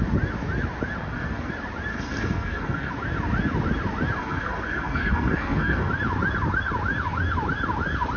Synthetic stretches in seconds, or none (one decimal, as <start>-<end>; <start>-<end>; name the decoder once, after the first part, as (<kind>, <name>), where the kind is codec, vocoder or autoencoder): 1.0-1.5 (codec, SNAC); 1.9-2.9; 4.2-5.9